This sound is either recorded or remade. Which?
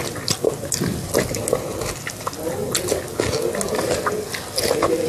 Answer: recorded